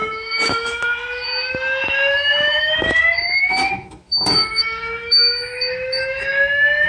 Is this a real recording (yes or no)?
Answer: no